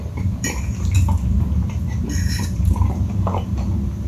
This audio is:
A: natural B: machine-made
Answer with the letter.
B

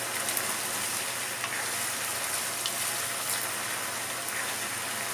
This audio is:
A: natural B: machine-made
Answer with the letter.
A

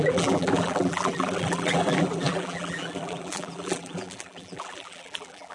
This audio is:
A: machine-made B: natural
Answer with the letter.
A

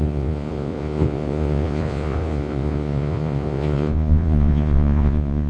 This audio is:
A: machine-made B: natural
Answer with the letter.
A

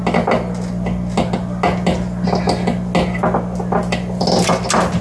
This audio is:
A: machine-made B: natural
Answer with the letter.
B